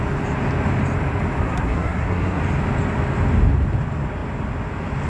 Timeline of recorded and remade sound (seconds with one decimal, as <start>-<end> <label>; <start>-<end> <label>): 0.0-1.4 recorded; 1.4-2.4 remade; 2.4-5.1 recorded